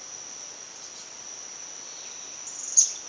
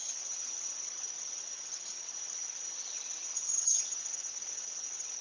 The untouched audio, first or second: first